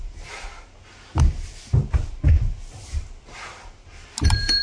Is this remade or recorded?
recorded